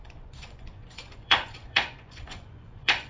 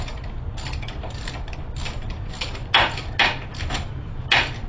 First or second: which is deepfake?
first